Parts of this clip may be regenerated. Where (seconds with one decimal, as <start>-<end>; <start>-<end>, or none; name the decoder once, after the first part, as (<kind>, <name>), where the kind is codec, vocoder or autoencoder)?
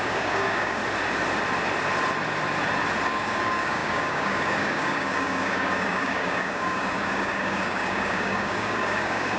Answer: 0.0-0.8 (codec, DAC); 3.1-9.4